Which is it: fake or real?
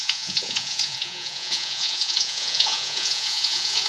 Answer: fake